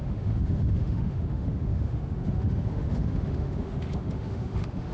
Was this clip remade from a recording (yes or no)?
yes